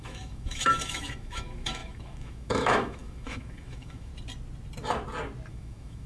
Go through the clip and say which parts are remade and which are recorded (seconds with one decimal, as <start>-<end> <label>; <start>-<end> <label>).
0.0-4.1 remade; 4.1-5.5 recorded; 5.5-6.1 remade